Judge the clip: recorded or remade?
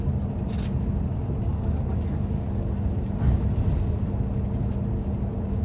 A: recorded